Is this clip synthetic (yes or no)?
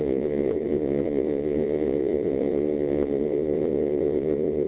yes